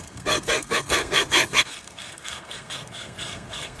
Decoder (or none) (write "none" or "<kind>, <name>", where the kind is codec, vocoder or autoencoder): codec, SNAC